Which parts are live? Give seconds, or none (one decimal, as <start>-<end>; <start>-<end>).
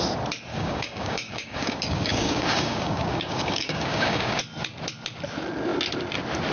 0.0-0.5; 4.4-6.5